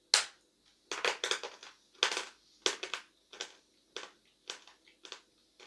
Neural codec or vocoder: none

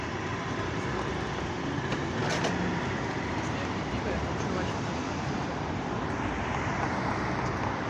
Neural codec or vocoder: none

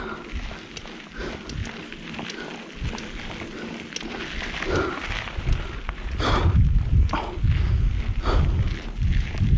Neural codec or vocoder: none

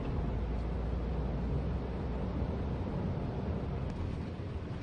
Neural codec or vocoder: none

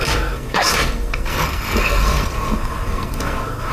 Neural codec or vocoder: codec, SNAC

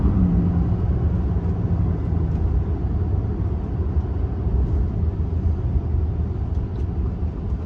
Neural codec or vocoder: none